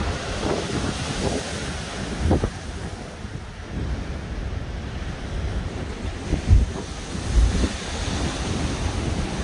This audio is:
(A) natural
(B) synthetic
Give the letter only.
A